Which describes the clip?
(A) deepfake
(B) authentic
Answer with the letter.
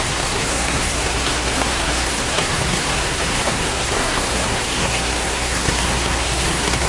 A